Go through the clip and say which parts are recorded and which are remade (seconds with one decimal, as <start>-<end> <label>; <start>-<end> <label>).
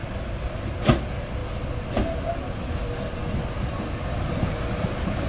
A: 0.0-5.3 recorded